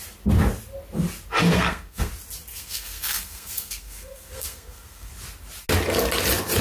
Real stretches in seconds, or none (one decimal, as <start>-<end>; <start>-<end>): 0.0-1.5; 2.1-2.5; 5.1-6.6

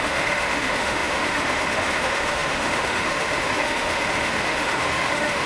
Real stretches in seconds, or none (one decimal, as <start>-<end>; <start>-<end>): none

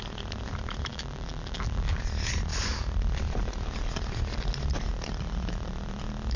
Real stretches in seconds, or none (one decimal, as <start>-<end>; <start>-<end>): 0.0-0.9; 2.0-6.4

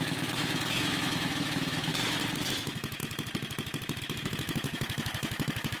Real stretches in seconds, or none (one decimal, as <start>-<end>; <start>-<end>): 1.9-2.4; 3.0-4.0

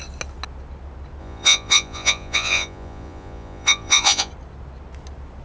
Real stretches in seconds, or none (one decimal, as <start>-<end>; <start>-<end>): 0.0-1.2; 4.3-5.4

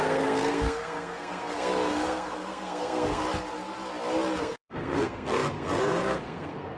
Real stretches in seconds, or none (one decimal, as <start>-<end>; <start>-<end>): 3.2-4.4

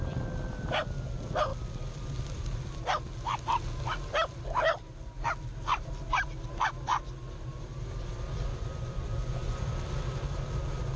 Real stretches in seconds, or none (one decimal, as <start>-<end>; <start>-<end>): 0.0-8.5; 9.6-11.0